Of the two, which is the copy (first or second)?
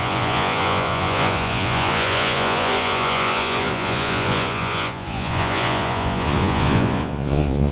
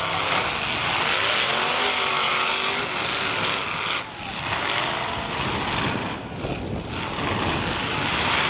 first